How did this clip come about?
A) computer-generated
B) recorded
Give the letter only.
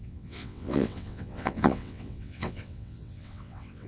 A